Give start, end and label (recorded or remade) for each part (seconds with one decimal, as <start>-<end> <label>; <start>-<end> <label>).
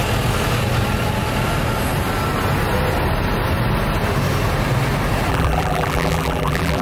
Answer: 0.0-5.3 recorded; 5.3-6.8 remade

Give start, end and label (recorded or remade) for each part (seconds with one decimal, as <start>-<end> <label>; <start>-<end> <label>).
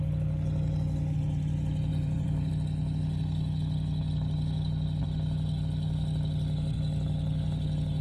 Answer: 0.0-1.9 recorded; 1.9-2.5 remade; 2.5-8.0 recorded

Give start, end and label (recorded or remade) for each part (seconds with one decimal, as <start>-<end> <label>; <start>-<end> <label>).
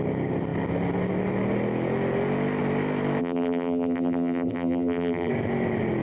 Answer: 0.0-3.2 recorded; 3.2-5.3 remade; 5.3-6.0 recorded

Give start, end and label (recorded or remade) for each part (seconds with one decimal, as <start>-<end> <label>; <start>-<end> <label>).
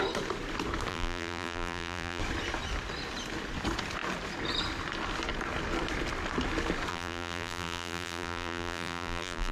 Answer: 0.0-0.9 recorded; 0.9-2.2 remade; 2.2-6.9 recorded; 6.9-9.5 remade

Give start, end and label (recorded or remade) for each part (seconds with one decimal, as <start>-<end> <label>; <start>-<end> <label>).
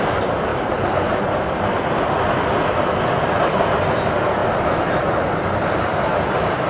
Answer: 0.0-0.5 remade; 0.5-1.5 recorded; 1.5-4.4 remade; 4.4-5.3 recorded; 5.3-6.7 remade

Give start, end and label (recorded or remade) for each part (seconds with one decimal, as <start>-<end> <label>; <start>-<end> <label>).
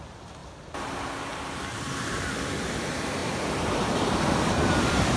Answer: 0.0-3.2 remade; 3.2-4.8 recorded; 4.8-5.2 remade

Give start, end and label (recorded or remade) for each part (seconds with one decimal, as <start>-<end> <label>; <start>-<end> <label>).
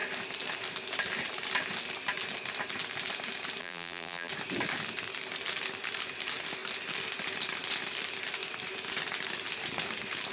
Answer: 0.0-3.6 recorded; 3.6-4.3 remade; 4.3-10.3 recorded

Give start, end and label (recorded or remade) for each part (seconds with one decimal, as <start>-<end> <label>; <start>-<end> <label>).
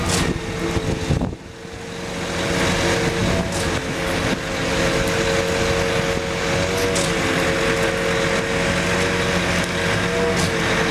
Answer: 0.0-10.9 recorded